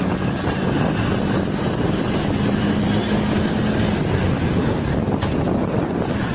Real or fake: real